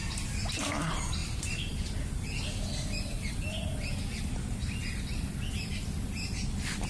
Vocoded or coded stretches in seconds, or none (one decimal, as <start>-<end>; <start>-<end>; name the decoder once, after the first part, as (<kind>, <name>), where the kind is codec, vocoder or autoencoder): none